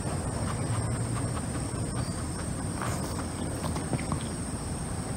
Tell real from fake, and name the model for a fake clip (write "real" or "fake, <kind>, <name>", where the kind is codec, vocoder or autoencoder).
real